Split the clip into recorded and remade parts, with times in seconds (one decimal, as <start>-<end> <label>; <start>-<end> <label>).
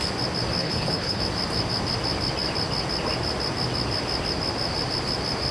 0.0-0.6 recorded; 0.6-1.2 remade; 1.2-5.5 recorded